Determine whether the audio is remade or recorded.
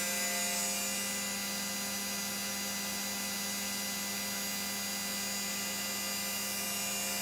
recorded